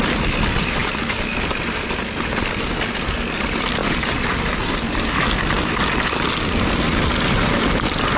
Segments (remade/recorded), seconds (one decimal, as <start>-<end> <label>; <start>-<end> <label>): 0.0-3.8 recorded; 3.8-5.1 remade; 5.1-8.2 recorded